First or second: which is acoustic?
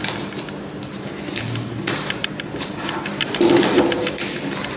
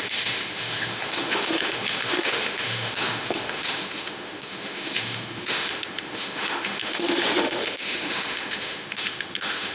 first